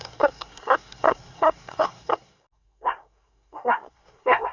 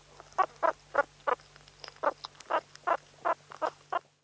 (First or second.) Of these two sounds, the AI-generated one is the first